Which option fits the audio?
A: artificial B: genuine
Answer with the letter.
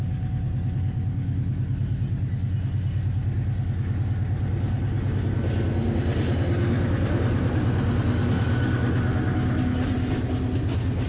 B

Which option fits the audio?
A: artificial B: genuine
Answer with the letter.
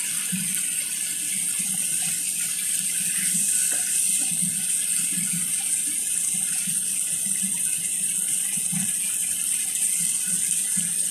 B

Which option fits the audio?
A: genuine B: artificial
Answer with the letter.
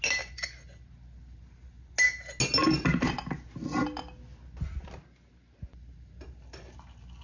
A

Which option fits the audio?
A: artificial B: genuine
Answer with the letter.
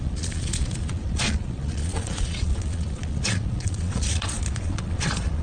A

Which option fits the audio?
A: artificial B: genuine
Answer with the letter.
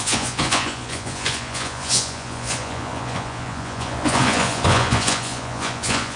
A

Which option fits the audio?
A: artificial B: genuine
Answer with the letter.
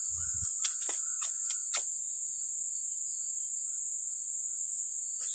A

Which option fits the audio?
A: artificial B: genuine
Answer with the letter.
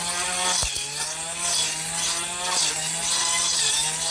B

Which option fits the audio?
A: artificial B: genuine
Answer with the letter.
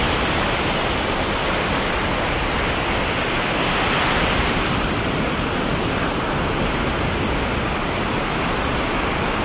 B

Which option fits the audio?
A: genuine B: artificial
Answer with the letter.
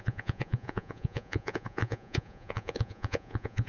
B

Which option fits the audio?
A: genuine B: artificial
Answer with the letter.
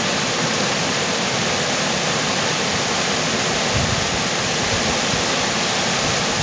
A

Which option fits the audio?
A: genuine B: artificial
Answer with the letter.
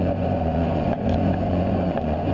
B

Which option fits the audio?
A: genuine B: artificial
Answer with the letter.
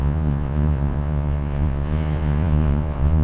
B